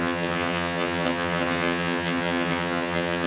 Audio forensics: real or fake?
fake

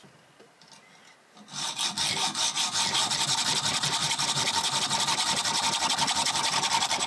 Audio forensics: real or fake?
real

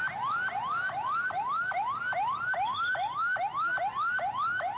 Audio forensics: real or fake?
real